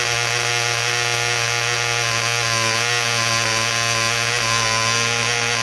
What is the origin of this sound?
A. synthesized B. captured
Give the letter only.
B